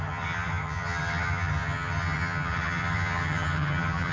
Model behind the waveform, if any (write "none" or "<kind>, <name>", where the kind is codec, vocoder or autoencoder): vocoder, HiFi-GAN